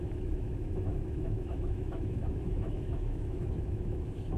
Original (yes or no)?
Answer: no